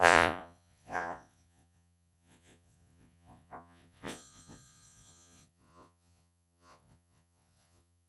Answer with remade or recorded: remade